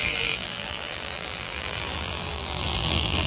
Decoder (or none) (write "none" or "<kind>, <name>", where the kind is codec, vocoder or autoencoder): vocoder, BigVGAN v2